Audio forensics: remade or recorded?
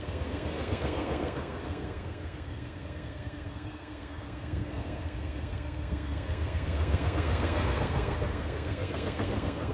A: remade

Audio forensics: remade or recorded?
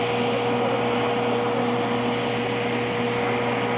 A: recorded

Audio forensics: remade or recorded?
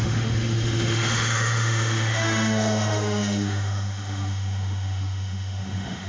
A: remade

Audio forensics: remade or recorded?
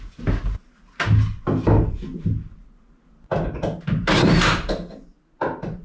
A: recorded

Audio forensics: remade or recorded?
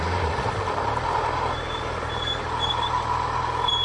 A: recorded